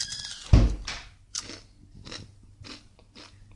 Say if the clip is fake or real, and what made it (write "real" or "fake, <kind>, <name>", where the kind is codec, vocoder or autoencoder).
real